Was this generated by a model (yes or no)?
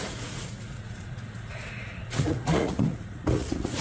yes